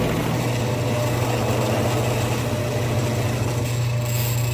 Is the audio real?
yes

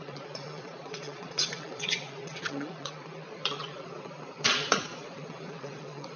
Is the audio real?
no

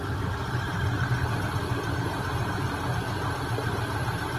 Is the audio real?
yes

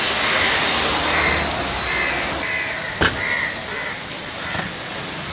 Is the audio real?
yes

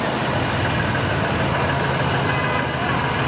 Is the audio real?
yes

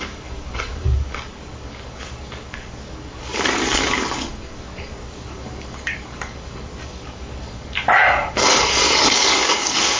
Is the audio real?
no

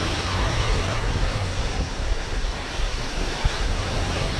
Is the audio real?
no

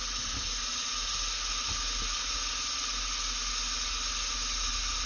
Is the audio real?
yes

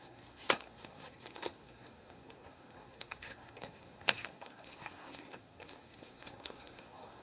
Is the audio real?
no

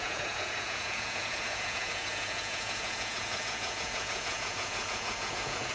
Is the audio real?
no